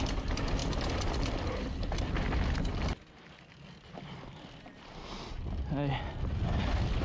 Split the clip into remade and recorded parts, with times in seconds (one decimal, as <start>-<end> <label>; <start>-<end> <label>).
0.0-2.7 recorded; 2.7-4.9 remade; 4.9-7.0 recorded